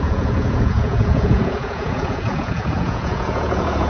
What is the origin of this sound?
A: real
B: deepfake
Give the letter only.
B